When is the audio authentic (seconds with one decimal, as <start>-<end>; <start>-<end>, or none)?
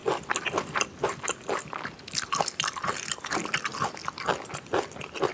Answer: 0.0-5.3